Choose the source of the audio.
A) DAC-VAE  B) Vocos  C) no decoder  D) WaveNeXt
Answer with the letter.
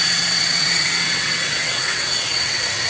D